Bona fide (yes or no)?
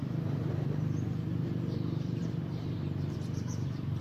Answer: no